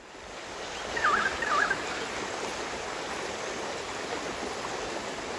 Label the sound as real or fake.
real